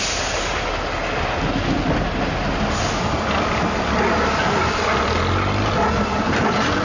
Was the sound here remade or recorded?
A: recorded